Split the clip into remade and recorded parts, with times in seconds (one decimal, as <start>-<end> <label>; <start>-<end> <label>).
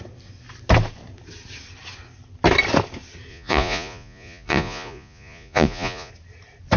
0.0-3.3 recorded; 3.3-6.1 remade; 6.1-6.8 recorded